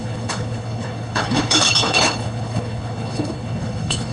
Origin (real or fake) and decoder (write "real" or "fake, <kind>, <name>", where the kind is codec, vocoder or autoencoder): fake, codec, HILCodec